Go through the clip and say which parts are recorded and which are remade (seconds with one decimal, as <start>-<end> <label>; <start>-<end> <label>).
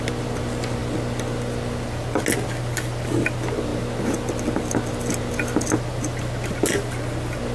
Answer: 0.0-7.5 recorded